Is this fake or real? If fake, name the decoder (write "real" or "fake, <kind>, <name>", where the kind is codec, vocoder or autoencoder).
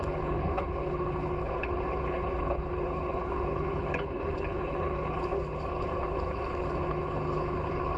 fake, codec, HILCodec